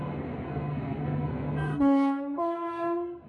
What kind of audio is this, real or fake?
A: fake